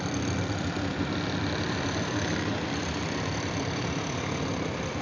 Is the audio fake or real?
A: fake